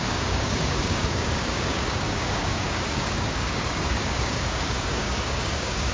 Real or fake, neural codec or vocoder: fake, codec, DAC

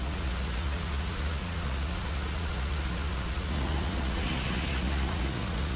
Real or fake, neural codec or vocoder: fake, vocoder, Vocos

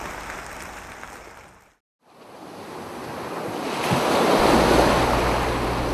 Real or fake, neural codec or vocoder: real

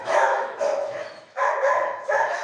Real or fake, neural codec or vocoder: fake, autoencoder, DAC-VAE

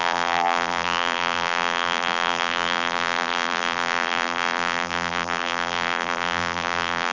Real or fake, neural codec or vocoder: fake, vocoder, BigVGAN v2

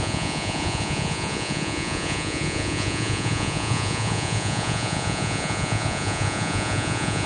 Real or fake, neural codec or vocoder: fake, vocoder, Vocos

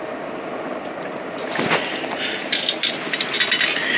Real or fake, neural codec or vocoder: real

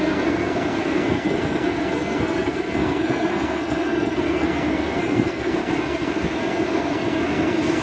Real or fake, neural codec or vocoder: fake, codec, SNAC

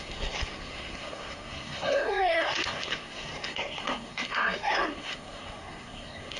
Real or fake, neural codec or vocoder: fake, codec, SNAC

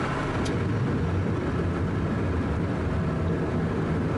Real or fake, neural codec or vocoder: fake, vocoder, BigVGAN v2